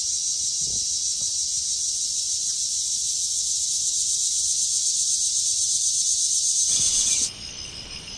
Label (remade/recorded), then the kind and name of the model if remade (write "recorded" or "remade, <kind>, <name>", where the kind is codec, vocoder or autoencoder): recorded